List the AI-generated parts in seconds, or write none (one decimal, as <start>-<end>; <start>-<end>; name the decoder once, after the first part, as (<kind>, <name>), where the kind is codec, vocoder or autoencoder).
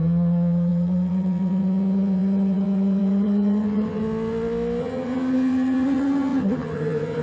0.0-4.0 (vocoder, HiFi-GAN); 4.8-7.2